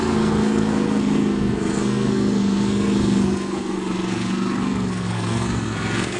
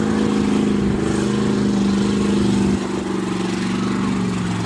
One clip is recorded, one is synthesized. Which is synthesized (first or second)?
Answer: first